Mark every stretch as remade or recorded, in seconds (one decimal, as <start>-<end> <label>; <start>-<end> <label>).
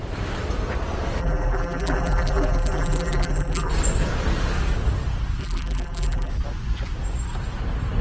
0.0-1.2 recorded; 1.2-3.7 remade; 3.7-5.4 recorded; 5.4-6.3 remade; 6.3-8.0 recorded